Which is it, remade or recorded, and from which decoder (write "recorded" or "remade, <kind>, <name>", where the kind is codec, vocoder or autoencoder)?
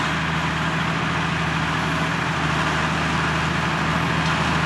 recorded